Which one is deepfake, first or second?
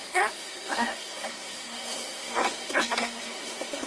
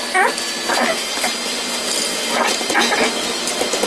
first